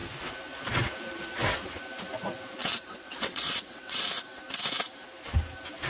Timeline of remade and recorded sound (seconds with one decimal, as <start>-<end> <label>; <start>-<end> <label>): 0.0-2.6 recorded; 2.6-4.0 remade; 4.0-5.9 recorded